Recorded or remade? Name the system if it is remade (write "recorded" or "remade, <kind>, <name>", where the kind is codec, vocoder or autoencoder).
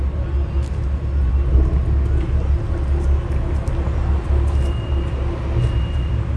recorded